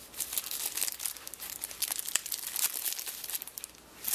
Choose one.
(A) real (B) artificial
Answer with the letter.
A